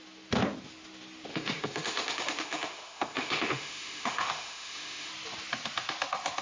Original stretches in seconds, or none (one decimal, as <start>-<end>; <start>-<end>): 0.0-1.3; 5.1-6.4